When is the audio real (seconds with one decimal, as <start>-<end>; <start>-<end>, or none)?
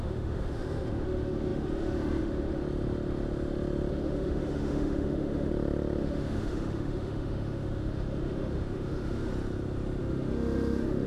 2.6-3.9; 5.5-6.0; 9.3-10.0